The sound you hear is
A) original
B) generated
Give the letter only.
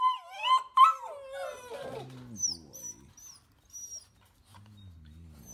A